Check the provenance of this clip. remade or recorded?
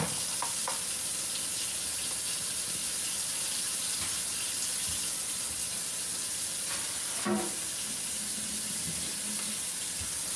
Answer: recorded